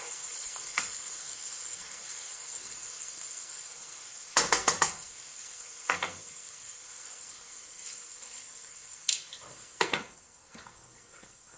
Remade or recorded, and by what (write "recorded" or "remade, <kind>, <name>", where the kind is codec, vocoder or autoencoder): remade, codec, SNAC